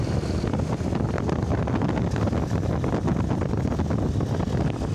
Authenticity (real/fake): real